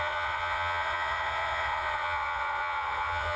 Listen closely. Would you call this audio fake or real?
fake